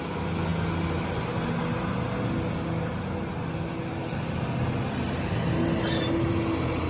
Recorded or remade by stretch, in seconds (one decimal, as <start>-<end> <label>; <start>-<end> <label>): 0.0-6.9 recorded